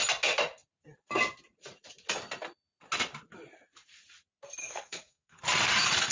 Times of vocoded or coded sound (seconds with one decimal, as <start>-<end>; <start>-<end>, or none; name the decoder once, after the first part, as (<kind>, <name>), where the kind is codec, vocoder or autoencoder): 4.6-5.4 (codec, SNAC)